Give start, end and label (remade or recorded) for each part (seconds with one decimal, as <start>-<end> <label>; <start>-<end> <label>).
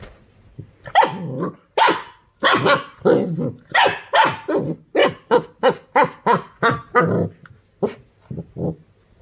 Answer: 0.0-9.2 recorded